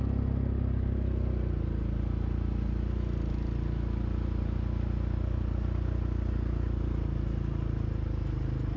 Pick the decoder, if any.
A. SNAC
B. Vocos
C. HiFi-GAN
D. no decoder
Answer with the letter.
D